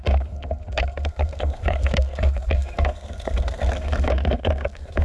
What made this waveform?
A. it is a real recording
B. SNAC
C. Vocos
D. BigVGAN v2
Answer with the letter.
B